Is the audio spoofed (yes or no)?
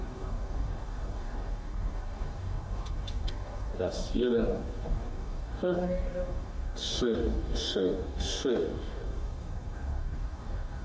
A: yes